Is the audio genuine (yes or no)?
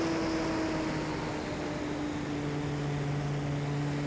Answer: yes